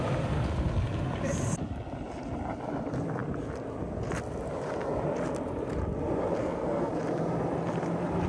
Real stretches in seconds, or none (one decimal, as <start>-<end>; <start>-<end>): 0.0-6.4; 6.9-8.3